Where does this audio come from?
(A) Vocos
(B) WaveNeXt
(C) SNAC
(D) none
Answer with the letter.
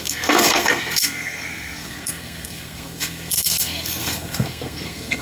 C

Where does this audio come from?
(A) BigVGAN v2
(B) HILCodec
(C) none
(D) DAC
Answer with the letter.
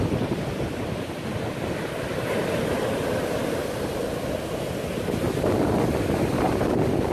C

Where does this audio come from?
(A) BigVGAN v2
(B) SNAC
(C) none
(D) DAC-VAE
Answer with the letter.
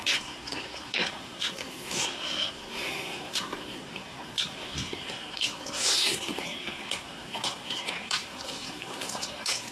B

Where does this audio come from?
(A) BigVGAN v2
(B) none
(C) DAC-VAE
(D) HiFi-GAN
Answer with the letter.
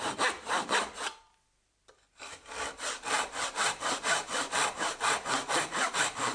A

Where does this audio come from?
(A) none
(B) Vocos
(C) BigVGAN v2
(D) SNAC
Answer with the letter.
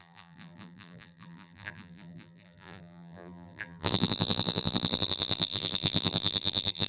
C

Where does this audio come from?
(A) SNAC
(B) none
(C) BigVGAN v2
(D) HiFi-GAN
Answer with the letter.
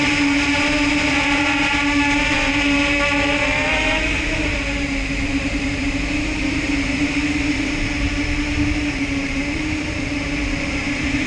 C